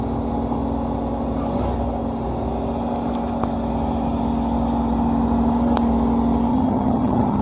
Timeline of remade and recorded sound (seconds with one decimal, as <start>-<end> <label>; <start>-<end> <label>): 0.0-6.5 recorded; 6.5-7.4 remade